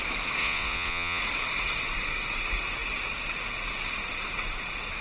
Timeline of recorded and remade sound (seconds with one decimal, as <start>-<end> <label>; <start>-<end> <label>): 0.0-0.4 recorded; 0.4-1.2 remade; 1.2-5.0 recorded